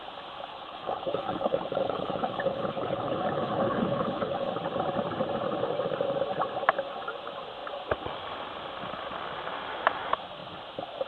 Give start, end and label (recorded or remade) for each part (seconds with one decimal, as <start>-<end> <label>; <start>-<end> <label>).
0.0-0.5 recorded; 0.5-4.5 remade; 4.5-11.1 recorded